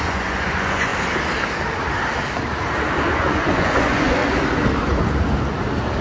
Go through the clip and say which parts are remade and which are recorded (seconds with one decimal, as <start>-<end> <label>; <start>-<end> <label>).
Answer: 0.0-0.9 remade; 0.9-3.1 recorded; 3.1-4.2 remade; 4.2-6.0 recorded